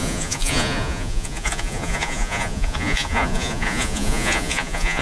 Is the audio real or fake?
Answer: fake